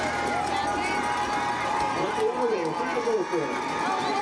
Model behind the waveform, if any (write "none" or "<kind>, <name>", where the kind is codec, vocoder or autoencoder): none